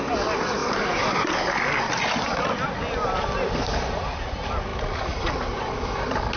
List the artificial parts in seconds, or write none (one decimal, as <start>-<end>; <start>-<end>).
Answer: none